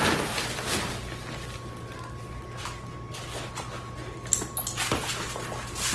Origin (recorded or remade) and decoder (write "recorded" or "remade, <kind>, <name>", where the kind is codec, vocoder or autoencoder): recorded